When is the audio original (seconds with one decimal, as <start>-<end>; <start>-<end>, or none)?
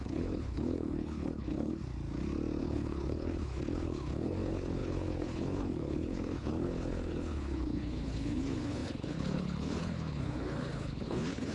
1.8-2.6